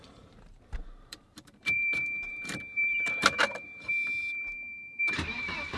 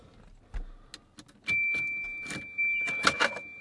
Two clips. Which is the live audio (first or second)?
second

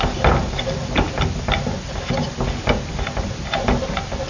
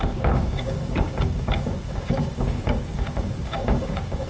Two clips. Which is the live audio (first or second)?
first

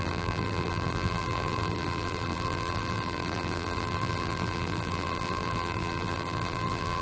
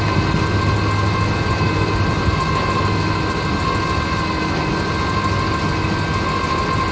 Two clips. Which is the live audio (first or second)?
second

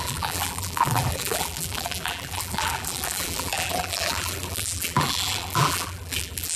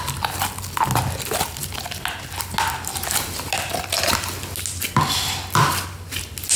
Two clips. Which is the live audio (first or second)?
second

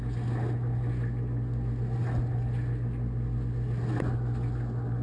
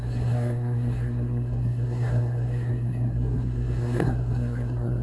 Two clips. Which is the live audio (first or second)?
first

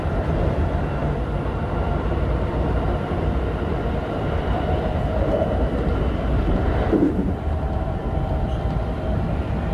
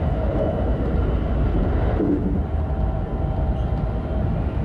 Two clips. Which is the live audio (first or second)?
second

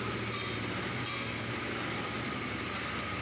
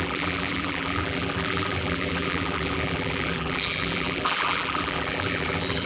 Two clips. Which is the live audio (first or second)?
first